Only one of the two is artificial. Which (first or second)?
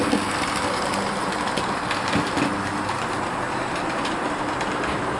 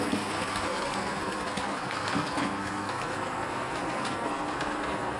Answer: second